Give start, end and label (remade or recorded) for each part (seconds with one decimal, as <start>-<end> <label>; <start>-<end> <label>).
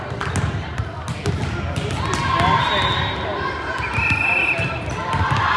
0.0-5.6 recorded